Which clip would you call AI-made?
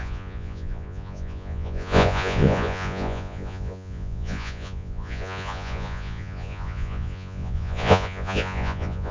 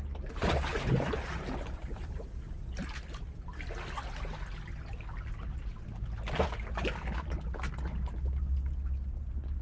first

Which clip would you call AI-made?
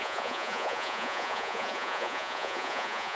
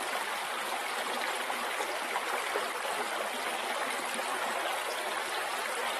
first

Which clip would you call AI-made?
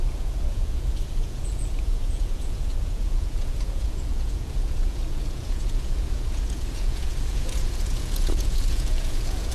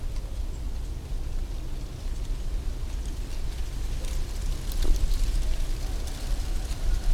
first